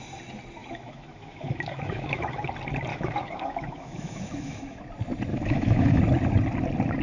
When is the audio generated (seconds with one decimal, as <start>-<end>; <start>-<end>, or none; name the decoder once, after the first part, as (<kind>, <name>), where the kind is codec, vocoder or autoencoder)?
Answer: 0.6-2.5 (autoencoder, DAC-VAE); 2.9-4.8; 5.3-6.0